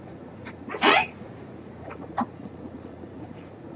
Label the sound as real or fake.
fake